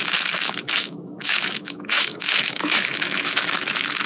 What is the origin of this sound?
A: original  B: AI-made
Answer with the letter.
B